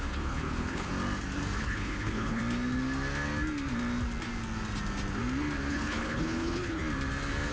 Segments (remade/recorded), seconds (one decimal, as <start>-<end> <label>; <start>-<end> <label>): 0.0-0.9 remade; 0.9-1.6 recorded; 1.6-2.4 remade; 2.4-5.7 recorded; 5.7-6.8 remade; 6.8-7.5 recorded